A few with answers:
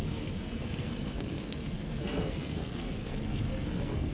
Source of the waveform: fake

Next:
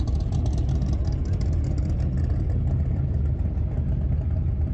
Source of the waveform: real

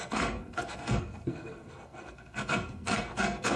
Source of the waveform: fake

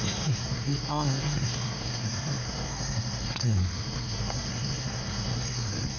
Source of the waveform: fake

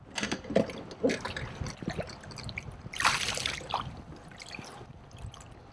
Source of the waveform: real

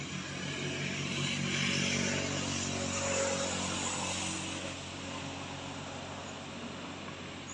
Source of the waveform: real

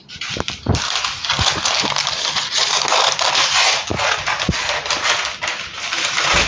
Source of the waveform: real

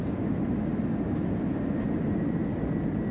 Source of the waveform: real